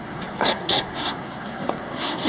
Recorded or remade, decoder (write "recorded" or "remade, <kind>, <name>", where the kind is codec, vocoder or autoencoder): remade, codec, SNAC